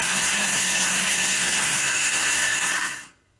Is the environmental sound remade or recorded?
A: remade